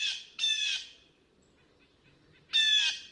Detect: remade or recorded recorded